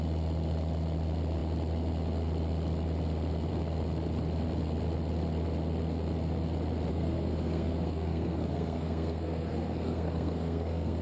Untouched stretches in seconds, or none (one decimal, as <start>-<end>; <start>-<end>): 0.0-6.9